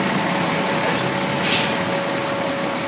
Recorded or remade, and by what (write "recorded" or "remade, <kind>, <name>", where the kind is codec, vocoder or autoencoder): recorded